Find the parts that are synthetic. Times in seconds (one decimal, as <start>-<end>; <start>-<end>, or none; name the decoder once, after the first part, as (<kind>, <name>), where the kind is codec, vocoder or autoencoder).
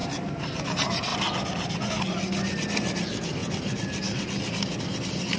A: none